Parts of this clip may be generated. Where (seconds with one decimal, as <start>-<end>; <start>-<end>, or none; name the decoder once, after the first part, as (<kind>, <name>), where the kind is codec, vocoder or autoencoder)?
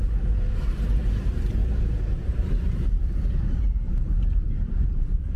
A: 0.0-5.4 (vocoder, BigVGAN v2)